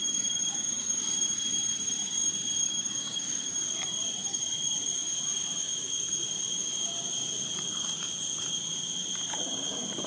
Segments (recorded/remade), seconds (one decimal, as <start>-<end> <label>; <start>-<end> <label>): 0.0-1.0 remade; 1.0-2.6 recorded; 2.6-3.5 remade; 3.5-10.1 recorded